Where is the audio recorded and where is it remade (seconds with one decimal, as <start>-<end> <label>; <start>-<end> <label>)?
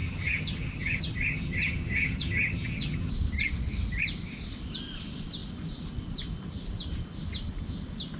0.0-3.1 remade; 3.1-8.2 recorded